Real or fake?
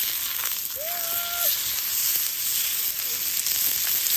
real